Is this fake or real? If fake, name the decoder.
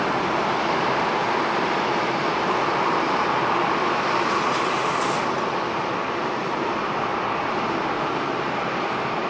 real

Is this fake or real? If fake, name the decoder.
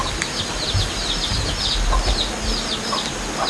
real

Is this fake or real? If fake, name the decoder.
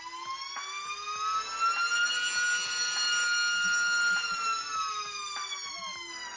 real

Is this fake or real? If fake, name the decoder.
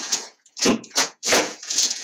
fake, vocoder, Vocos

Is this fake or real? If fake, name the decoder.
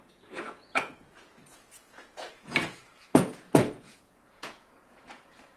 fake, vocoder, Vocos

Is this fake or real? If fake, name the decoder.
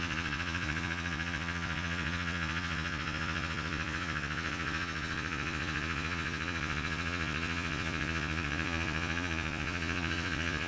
fake, vocoder, Vocos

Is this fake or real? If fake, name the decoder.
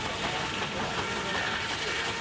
real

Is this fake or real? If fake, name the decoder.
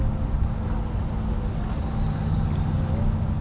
real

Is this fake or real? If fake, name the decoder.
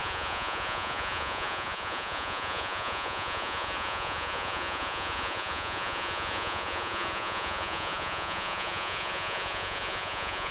fake, vocoder, Vocos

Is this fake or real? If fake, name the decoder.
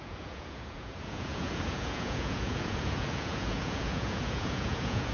fake, vocoder, Vocos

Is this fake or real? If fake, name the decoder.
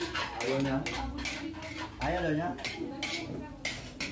real